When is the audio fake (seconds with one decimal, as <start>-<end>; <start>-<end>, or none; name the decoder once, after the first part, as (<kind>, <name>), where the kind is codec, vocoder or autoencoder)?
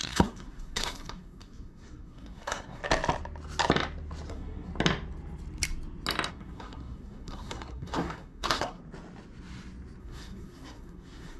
0.0-2.8 (codec, SNAC); 4.3-4.7; 6.3-8.8; 10.0-11.4